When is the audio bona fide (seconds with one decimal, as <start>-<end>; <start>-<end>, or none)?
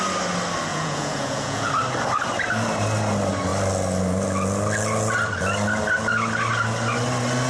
0.0-0.7; 1.7-7.5